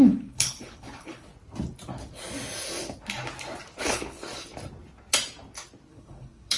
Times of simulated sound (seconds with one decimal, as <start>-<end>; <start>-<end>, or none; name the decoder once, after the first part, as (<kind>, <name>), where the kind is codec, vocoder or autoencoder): 0.0-1.3 (codec, HILCodec); 3.8-4.2; 5.9-6.6